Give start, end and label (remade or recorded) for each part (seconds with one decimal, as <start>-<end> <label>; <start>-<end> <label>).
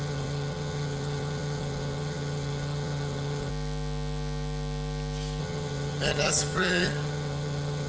0.0-3.5 remade; 3.5-5.4 recorded; 5.4-7.9 remade